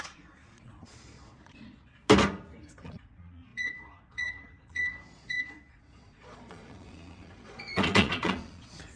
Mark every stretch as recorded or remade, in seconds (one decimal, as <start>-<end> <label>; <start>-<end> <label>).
0.0-2.0 remade; 2.0-2.7 recorded; 2.7-9.0 remade